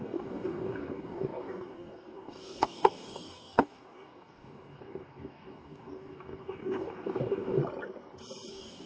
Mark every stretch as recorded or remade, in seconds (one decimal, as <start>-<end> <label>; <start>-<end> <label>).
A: 0.0-7.6 remade; 7.6-8.5 recorded; 8.5-8.9 remade